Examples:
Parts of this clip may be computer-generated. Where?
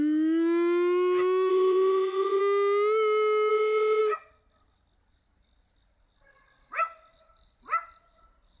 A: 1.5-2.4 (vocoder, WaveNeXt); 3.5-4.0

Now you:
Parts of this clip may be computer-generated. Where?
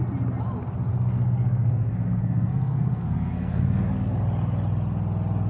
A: 0.9-4.2 (codec, SNAC)